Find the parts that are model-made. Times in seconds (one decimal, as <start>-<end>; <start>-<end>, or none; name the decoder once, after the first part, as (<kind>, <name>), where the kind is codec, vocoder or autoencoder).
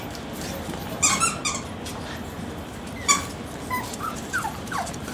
0.0-0.8 (vocoder, BigVGAN v2); 3.9-5.1